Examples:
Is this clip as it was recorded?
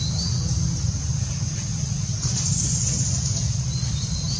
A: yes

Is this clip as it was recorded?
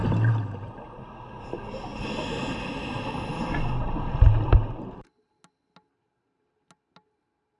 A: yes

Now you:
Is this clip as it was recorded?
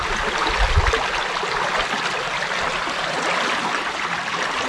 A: yes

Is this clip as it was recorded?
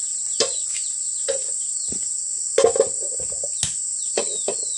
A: yes